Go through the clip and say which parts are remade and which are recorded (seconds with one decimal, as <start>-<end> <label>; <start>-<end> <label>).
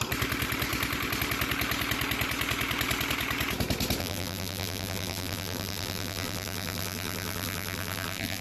0.0-4.0 recorded; 4.0-8.4 remade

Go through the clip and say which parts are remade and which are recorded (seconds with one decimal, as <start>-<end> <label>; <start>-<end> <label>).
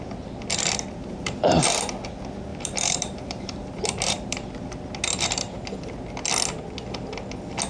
0.0-1.0 recorded; 1.0-1.6 remade; 1.6-2.5 recorded; 2.5-4.8 remade; 4.8-7.7 recorded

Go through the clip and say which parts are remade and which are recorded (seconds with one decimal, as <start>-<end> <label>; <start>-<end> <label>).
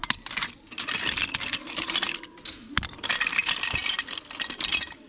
0.0-3.8 recorded; 3.8-5.1 remade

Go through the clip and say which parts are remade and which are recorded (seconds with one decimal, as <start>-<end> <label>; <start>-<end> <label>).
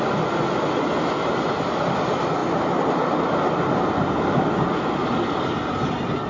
0.0-6.3 recorded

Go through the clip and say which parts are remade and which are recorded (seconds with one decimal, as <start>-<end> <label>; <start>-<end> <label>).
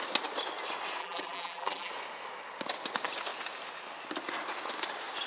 0.0-1.0 recorded; 1.0-1.9 remade; 1.9-5.3 recorded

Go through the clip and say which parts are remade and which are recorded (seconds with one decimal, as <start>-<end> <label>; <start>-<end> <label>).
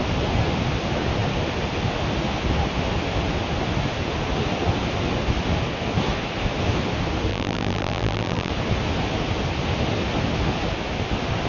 0.0-7.3 recorded; 7.3-8.5 remade; 8.5-11.5 recorded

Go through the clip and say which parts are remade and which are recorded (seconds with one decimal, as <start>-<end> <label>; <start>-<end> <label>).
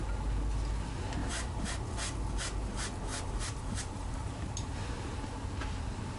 0.0-1.2 recorded; 1.2-1.7 remade; 1.7-3.1 recorded; 3.1-4.8 remade; 4.8-6.2 recorded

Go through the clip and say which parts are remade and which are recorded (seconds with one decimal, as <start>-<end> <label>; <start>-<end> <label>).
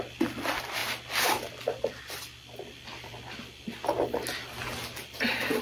0.0-0.8 recorded; 0.8-2.2 remade; 2.2-2.9 recorded; 2.9-3.4 remade; 3.4-5.6 recorded